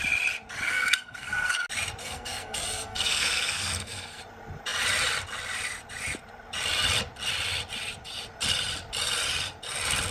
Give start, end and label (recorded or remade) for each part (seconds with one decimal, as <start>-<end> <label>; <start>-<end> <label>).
0.0-0.7 recorded; 0.7-1.5 remade; 1.5-2.0 recorded; 2.0-4.2 remade; 4.2-10.1 recorded